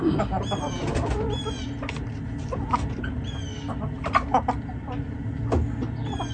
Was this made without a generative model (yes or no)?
yes